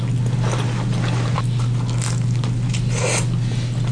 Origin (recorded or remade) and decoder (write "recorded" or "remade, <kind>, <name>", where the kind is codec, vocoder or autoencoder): recorded